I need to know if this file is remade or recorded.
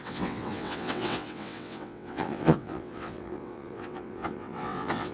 remade